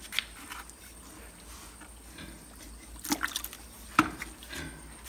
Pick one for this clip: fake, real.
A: real